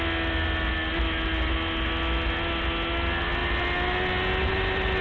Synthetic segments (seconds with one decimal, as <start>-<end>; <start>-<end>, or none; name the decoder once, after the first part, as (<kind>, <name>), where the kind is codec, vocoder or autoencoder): none

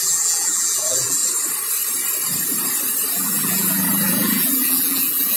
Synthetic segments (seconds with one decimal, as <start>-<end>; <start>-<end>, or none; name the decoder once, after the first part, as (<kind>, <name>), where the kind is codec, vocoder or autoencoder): 0.0-1.2 (vocoder, BigVGAN v2); 3.1-5.4

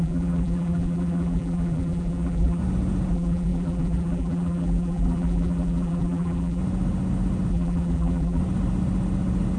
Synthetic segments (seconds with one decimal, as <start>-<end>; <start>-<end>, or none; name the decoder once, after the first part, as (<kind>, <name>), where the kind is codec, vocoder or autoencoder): 0.0-2.6 (vocoder, BigVGAN v2); 3.1-6.6; 7.5-8.4

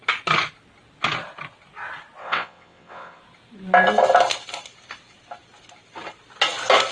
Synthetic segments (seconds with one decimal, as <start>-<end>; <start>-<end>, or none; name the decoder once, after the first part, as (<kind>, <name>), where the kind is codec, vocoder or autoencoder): 2.2-3.2 (vocoder, WaveNeXt)

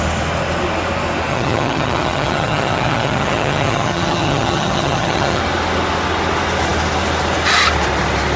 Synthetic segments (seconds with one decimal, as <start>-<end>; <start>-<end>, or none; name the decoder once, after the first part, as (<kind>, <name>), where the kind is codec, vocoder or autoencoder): 1.3-5.4 (vocoder, HiFi-GAN)

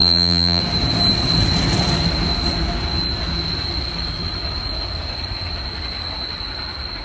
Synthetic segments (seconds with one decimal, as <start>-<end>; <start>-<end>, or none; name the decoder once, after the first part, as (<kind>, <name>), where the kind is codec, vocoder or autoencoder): 0.0-0.6 (vocoder, BigVGAN v2)

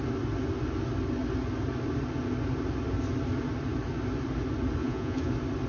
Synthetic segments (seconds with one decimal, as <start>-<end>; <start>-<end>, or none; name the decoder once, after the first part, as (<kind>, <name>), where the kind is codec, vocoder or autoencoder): 4.8-5.3 (vocoder, Vocos)